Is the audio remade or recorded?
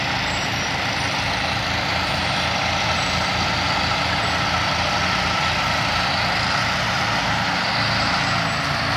recorded